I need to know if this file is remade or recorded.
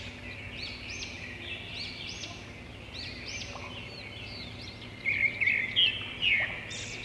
recorded